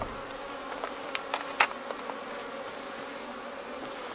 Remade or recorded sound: recorded